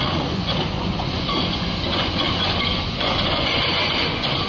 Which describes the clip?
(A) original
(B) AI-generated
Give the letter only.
B